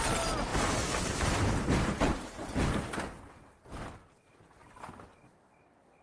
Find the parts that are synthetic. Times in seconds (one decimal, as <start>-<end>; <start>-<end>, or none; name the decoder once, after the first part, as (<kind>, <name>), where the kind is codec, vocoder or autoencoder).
none